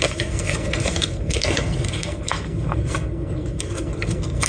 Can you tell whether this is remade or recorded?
remade